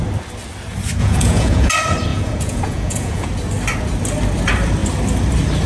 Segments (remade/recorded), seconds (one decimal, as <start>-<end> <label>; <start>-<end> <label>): 0.0-1.0 recorded; 1.0-1.7 remade; 1.7-2.1 recorded; 2.1-3.3 remade; 3.3-5.7 recorded